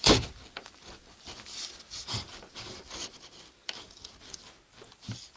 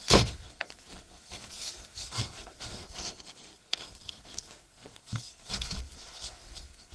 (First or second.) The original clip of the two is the first